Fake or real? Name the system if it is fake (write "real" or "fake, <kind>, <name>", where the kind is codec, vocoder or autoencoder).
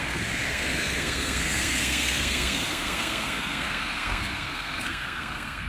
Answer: fake, codec, SNAC